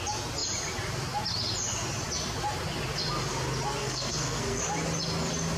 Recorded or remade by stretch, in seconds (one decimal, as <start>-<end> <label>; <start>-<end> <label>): 0.0-3.8 recorded; 3.8-4.6 remade; 4.6-5.6 recorded